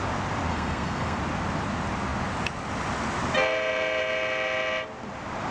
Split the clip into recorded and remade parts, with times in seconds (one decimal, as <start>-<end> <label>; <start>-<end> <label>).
0.0-0.5 recorded; 0.5-1.2 remade; 1.2-5.5 recorded